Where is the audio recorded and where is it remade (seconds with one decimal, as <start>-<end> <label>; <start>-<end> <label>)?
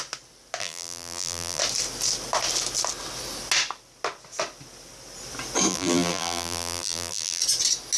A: 0.0-0.6 recorded; 0.6-1.6 remade; 1.6-5.7 recorded; 5.7-7.4 remade; 7.4-8.0 recorded